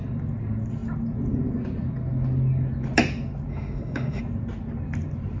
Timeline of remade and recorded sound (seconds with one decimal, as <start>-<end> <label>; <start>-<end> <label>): 0.0-3.5 recorded; 3.5-4.2 remade; 4.2-5.4 recorded

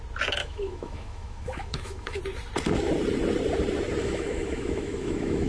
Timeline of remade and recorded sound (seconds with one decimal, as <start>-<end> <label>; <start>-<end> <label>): 0.0-0.4 recorded; 0.4-2.2 remade; 2.2-4.0 recorded; 4.0-5.5 remade

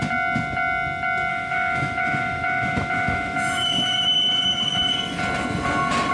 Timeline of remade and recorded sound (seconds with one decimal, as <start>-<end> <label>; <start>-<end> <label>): 0.0-1.3 recorded; 1.3-4.9 remade; 4.9-6.1 recorded

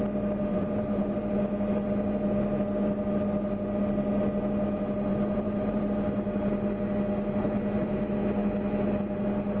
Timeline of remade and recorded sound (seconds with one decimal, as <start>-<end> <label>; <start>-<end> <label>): 0.0-0.5 recorded; 0.5-1.2 remade; 1.2-5.1 recorded; 5.1-5.9 remade; 5.9-7.4 recorded; 7.4-8.0 remade; 8.0-9.6 recorded